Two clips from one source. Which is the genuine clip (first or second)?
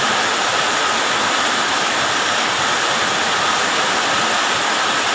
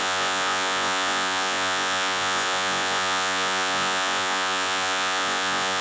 first